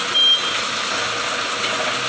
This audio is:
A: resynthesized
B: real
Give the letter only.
B